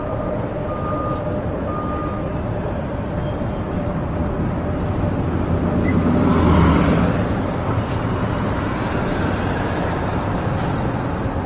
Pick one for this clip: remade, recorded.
recorded